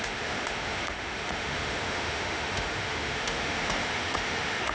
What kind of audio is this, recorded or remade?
remade